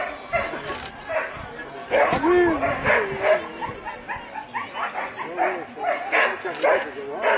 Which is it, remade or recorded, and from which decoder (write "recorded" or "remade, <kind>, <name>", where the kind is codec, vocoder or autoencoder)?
recorded